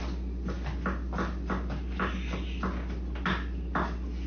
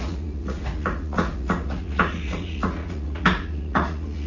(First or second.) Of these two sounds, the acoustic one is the first